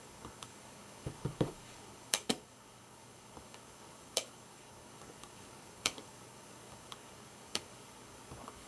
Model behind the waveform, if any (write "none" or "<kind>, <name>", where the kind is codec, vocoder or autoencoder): codec, DAC